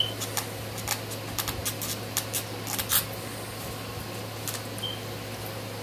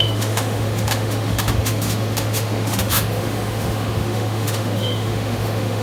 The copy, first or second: second